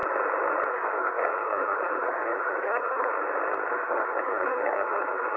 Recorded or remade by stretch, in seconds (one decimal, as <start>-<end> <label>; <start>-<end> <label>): 0.0-0.7 recorded; 0.7-3.1 remade; 3.1-3.7 recorded; 3.7-5.4 remade